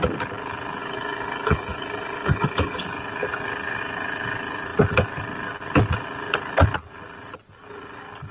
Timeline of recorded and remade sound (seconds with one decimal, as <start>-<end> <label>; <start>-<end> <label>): 0.0-0.8 recorded; 0.8-2.8 remade; 2.8-8.3 recorded